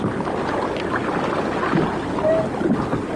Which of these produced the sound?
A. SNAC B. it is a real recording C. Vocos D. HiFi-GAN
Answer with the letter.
B